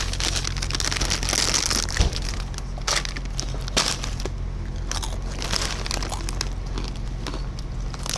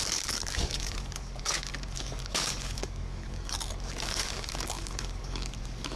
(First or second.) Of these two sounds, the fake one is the second